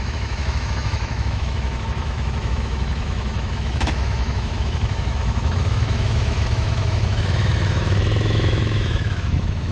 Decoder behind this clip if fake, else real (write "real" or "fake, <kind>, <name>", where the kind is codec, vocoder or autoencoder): fake, autoencoder, DAC-VAE